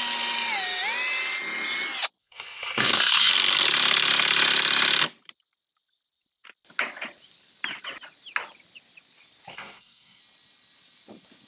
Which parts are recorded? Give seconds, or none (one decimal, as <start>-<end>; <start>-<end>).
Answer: 0.0-2.2; 3.3-9.5; 10.2-11.5

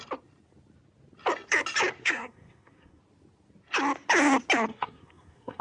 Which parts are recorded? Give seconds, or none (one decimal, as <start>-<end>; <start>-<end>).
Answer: 0.0-2.0; 3.0-4.7

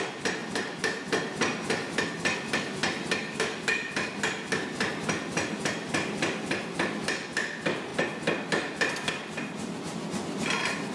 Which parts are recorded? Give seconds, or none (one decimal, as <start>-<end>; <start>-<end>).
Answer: 0.0-10.9

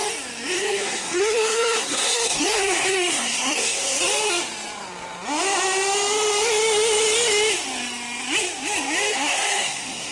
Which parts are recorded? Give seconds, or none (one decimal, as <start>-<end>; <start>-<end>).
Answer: 0.0-0.6; 4.0-9.1

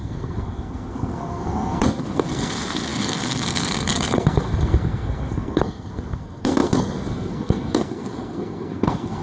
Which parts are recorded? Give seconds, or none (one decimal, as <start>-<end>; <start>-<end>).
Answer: none

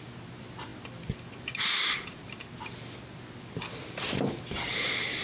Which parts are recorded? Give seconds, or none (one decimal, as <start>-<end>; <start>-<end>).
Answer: 0.0-5.2

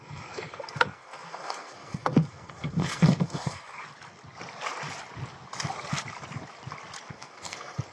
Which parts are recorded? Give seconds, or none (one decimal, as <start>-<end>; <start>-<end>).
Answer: 3.8-7.1

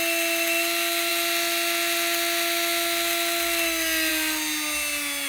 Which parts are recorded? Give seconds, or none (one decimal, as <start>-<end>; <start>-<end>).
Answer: 0.0-5.3